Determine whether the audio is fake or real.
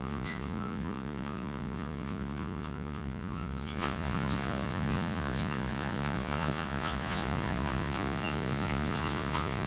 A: fake